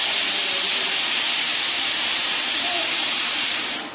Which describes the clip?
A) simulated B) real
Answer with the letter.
A